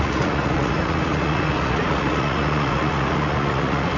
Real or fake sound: fake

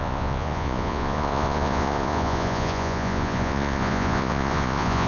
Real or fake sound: fake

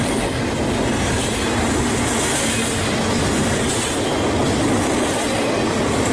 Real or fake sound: real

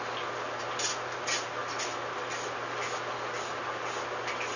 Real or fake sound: real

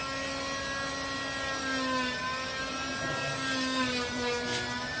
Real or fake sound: real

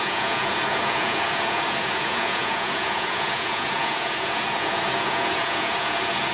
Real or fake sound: fake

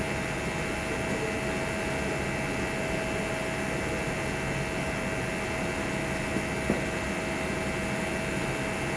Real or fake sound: real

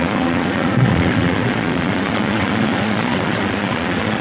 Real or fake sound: fake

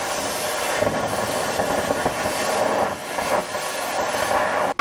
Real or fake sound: real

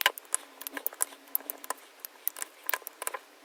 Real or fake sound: real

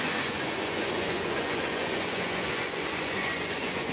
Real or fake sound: fake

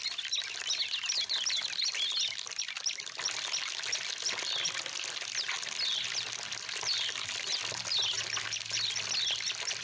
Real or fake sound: real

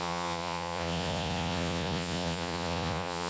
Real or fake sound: fake